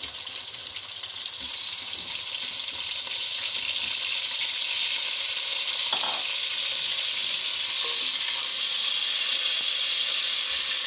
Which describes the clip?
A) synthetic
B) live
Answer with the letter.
B